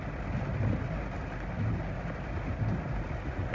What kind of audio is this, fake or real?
real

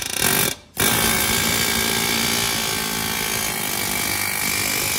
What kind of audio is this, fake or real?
real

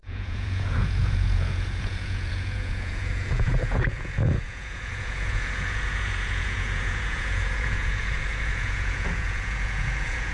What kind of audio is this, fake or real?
fake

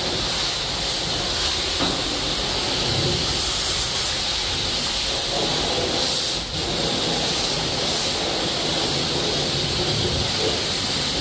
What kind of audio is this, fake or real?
real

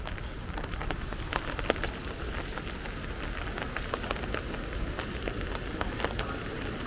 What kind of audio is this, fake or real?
real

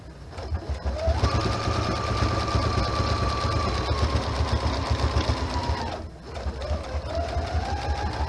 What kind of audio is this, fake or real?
real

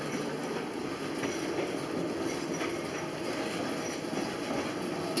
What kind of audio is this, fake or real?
real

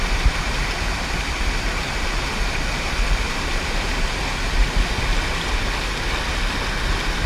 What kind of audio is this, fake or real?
real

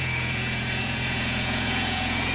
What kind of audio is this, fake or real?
fake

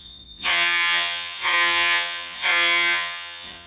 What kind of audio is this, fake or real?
fake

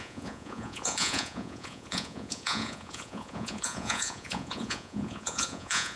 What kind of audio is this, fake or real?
fake